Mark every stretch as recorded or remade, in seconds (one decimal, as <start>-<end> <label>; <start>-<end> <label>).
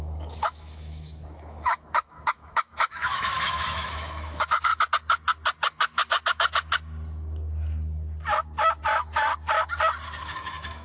0.0-4.7 remade; 4.7-8.8 recorded; 8.8-9.3 remade; 9.3-10.2 recorded; 10.2-10.8 remade